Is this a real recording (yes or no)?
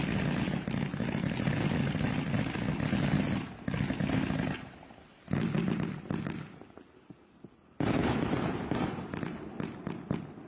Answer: yes